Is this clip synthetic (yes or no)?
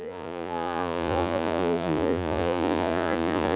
yes